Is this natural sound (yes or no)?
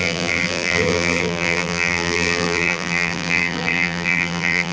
no